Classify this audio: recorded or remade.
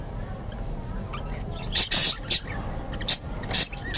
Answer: recorded